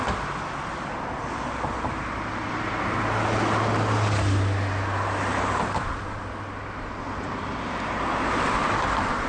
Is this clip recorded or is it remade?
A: recorded